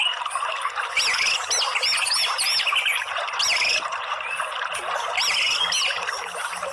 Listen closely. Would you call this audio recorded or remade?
recorded